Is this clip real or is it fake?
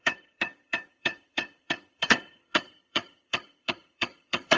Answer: fake